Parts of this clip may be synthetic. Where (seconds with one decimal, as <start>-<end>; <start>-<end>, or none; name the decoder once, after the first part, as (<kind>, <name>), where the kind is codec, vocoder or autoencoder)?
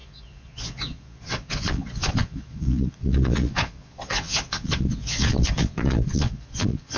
0.0-7.0 (vocoder, Vocos)